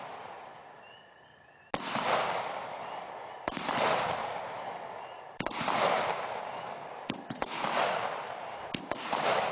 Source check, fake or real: real